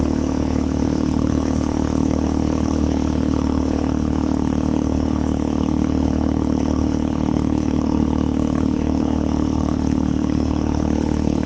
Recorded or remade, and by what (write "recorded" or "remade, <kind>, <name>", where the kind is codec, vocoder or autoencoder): remade, codec, HILCodec